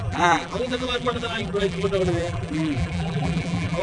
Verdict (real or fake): fake